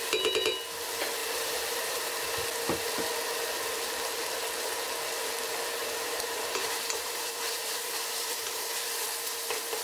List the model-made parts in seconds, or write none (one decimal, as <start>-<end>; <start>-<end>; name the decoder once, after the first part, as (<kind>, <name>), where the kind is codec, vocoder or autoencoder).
1.2-2.1 (vocoder, BigVGAN v2); 5.8-8.7